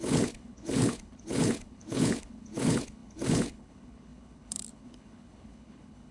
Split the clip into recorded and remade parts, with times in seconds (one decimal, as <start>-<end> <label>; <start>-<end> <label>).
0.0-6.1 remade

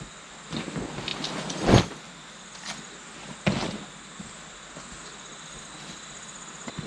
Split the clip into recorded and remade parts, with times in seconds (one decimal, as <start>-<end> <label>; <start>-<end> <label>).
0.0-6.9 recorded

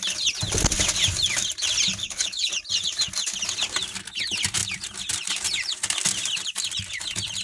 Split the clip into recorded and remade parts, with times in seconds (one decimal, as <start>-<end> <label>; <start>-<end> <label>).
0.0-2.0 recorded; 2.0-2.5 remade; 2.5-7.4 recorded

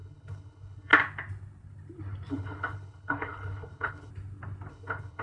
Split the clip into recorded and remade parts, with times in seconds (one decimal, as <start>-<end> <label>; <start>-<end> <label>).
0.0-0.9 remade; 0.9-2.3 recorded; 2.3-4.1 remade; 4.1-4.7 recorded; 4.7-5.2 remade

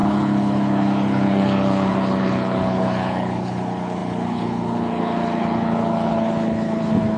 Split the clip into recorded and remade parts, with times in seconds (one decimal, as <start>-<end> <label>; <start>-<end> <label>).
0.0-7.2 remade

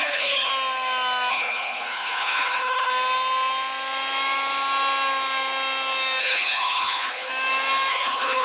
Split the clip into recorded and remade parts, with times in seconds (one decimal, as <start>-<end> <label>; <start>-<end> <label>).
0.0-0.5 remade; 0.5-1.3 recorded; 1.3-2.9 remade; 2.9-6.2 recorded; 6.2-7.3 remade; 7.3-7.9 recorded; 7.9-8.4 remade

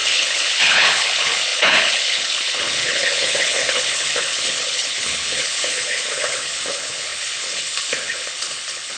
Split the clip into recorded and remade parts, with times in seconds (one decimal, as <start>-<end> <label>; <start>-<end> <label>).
0.0-9.0 remade